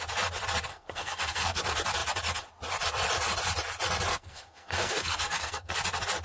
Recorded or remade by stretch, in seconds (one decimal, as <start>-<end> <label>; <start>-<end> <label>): 0.0-0.7 recorded; 0.7-1.6 remade; 1.6-4.1 recorded; 4.1-5.7 remade; 5.7-6.2 recorded